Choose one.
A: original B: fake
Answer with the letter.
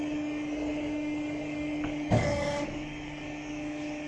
B